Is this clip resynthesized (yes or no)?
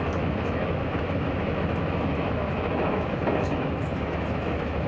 yes